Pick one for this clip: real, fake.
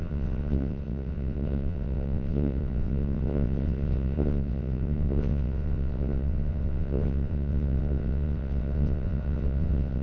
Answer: fake